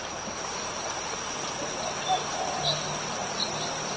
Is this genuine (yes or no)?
yes